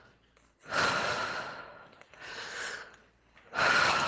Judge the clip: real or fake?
real